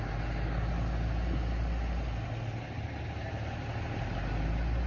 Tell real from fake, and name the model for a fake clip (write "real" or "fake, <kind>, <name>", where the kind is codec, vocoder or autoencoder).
real